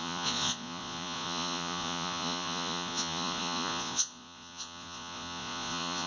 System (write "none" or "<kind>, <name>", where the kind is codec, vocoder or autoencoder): vocoder, Vocos